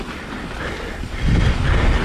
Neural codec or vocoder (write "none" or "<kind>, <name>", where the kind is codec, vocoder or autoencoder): none